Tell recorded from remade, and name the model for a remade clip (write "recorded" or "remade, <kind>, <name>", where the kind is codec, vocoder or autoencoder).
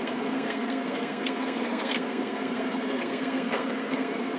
remade, codec, SNAC